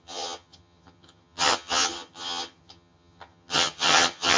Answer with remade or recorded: remade